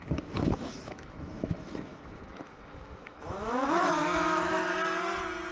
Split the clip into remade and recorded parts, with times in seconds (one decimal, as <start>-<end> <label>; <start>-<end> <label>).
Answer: 0.0-4.6 remade; 4.6-5.5 recorded